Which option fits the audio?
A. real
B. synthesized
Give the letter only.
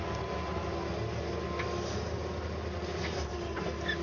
A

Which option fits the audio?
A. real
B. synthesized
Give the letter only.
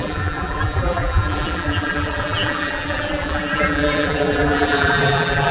B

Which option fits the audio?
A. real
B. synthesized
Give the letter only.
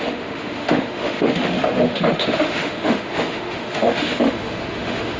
B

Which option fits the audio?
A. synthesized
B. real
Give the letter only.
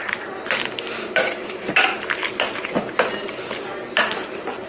B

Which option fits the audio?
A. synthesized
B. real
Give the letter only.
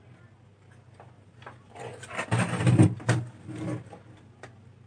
B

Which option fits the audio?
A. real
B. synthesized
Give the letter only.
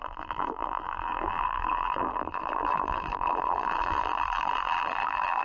B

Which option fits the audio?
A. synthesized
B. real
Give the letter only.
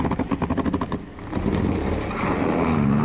B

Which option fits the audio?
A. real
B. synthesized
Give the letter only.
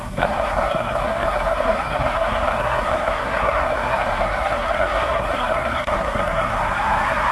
B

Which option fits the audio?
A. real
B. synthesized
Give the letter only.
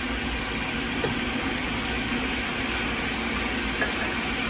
A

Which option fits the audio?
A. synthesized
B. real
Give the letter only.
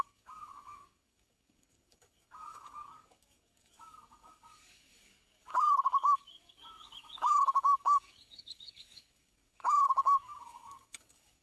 A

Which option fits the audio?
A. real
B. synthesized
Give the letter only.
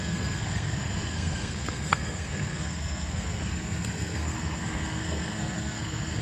B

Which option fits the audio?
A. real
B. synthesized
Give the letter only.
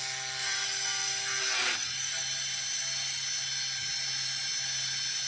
A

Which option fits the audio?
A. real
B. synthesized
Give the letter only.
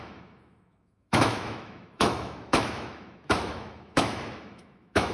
B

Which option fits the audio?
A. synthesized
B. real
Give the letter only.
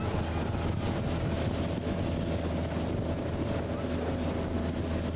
B